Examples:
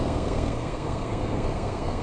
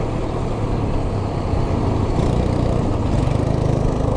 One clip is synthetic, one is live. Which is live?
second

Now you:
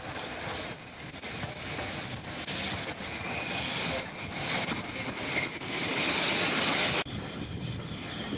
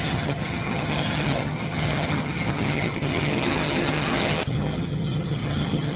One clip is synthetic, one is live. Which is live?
first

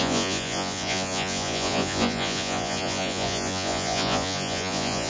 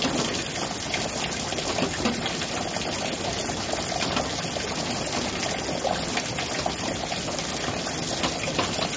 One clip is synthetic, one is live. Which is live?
second